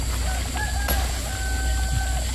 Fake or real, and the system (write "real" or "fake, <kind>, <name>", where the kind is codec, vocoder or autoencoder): real